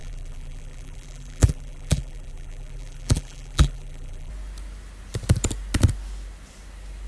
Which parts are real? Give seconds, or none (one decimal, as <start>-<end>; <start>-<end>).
4.3-7.1